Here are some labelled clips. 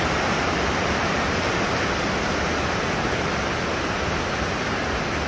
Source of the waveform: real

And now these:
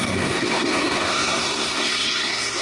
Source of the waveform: fake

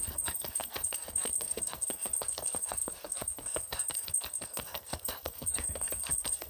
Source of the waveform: fake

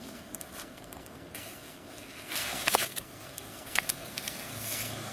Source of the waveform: fake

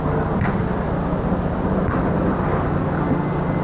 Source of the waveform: real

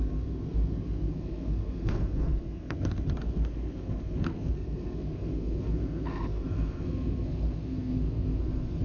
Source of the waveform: fake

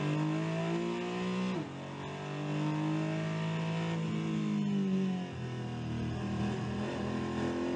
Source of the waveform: real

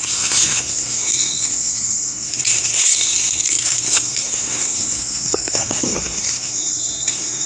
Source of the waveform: fake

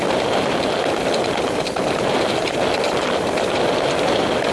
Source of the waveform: real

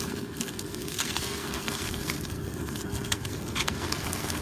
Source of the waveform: fake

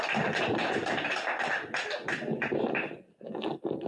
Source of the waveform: real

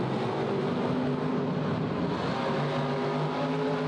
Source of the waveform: real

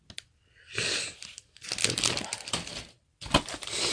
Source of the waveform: real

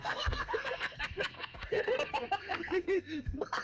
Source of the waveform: fake